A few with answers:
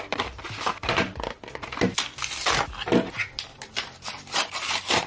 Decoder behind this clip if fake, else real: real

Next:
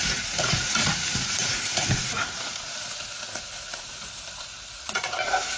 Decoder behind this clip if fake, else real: fake, vocoder, Vocos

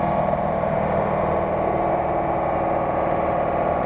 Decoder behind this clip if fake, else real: real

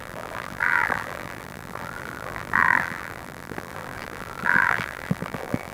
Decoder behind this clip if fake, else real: fake, vocoder, BigVGAN v2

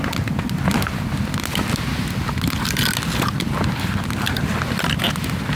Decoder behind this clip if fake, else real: real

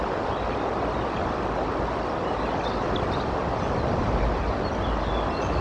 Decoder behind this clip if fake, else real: real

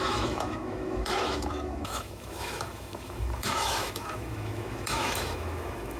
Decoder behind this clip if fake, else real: fake, autoencoder, DAC-VAE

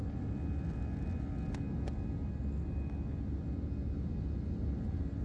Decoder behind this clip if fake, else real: real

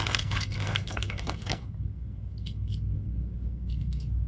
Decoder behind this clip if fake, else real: fake, codec, SNAC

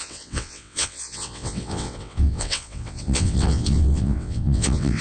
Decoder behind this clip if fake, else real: fake, vocoder, WaveNeXt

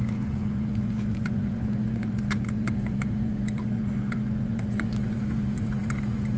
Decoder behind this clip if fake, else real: fake, vocoder, Vocos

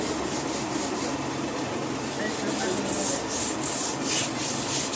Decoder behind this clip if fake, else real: real